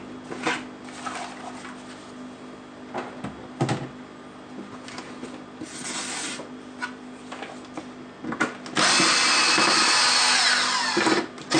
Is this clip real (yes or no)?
yes